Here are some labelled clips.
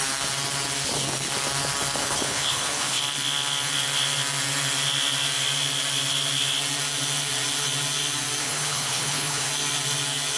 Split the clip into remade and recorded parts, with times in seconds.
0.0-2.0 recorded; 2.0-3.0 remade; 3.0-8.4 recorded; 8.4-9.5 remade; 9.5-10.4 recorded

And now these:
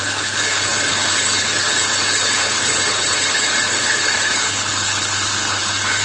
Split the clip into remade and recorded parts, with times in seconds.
0.0-6.0 remade

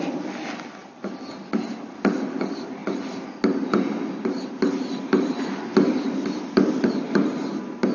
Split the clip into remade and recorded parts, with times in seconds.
0.0-7.9 recorded